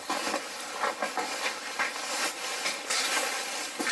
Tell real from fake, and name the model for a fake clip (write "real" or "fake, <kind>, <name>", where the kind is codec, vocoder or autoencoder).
real